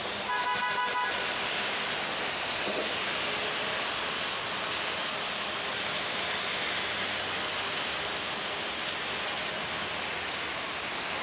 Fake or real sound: real